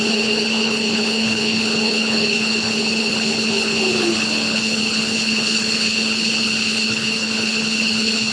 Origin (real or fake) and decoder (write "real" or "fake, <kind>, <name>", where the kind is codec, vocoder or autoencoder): fake, codec, HILCodec